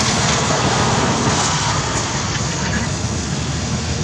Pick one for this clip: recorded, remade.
remade